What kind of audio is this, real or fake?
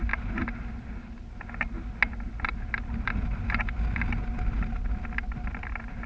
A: real